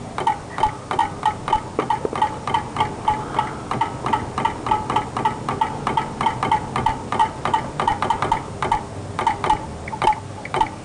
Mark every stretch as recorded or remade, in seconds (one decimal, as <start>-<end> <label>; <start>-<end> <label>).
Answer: 0.0-10.8 recorded